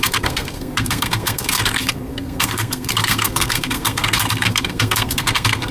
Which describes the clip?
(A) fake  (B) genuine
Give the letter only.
A